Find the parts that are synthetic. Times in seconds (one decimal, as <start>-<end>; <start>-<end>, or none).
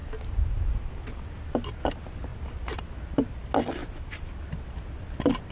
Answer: 3.8-4.5